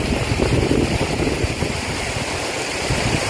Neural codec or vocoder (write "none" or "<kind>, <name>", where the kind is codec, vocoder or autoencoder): none